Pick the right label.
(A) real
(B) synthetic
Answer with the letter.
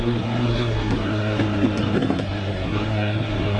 B